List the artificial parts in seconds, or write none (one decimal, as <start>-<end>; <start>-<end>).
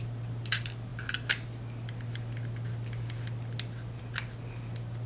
none